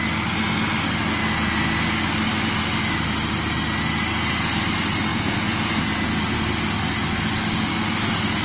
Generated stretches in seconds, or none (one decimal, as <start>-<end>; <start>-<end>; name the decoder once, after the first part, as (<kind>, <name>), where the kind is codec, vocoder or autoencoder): 5.1-5.8 (vocoder, Vocos)